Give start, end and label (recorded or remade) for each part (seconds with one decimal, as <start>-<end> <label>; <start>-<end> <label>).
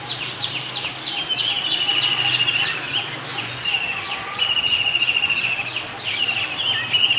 0.0-3.3 recorded; 3.3-5.9 remade; 5.9-7.2 recorded